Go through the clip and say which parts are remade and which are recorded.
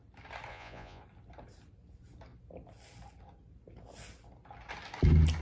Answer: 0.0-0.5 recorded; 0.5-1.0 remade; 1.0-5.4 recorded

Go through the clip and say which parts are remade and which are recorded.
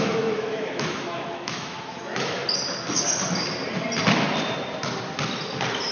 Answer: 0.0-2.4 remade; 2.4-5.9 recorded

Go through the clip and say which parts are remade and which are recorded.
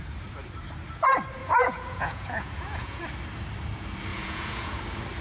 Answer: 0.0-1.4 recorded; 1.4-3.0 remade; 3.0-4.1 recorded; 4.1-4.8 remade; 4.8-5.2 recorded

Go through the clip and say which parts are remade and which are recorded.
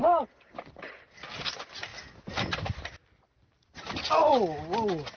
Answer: 0.0-0.9 remade; 0.9-1.9 recorded; 1.9-3.4 remade; 3.4-5.2 recorded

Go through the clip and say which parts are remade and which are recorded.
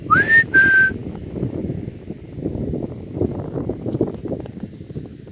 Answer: 0.0-5.3 recorded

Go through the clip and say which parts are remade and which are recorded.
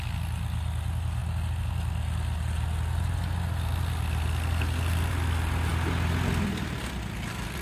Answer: 0.0-7.6 recorded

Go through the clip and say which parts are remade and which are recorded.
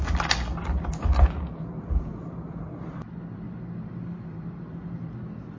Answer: 0.0-5.6 recorded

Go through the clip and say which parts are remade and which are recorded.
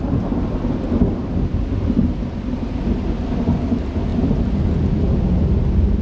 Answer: 0.0-6.0 recorded